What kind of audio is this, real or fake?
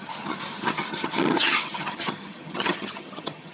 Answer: fake